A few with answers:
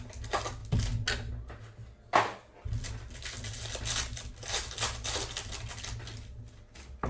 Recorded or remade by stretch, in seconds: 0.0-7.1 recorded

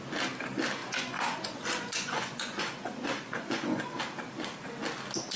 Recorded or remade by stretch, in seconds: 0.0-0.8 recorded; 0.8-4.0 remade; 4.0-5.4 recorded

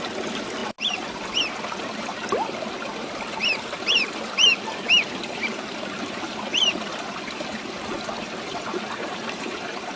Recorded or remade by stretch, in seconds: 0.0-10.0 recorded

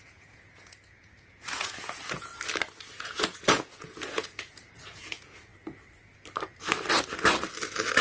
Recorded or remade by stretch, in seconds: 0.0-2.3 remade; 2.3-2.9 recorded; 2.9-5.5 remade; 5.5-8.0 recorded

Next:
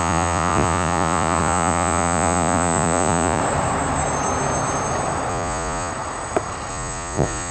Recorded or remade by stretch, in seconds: 0.0-3.4 remade; 3.4-5.3 recorded; 5.3-5.9 remade; 5.9-6.7 recorded; 6.7-7.5 remade

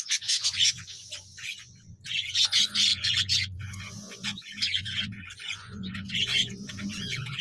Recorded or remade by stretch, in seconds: 0.0-7.4 remade

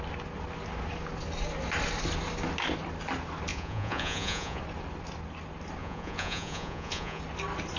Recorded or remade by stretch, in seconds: 0.0-3.5 recorded; 3.5-4.6 remade; 4.6-5.8 recorded; 5.8-7.2 remade; 7.2-7.8 recorded

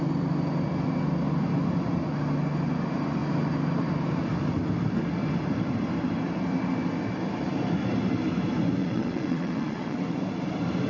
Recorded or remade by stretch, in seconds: 0.0-8.8 recorded; 8.8-10.0 remade; 10.0-10.9 recorded